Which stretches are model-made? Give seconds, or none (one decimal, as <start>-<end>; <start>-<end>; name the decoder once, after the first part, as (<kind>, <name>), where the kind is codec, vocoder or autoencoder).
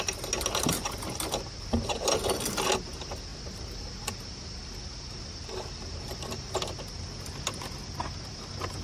none